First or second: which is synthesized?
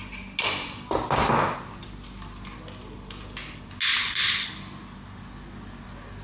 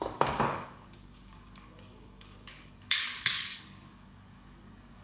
second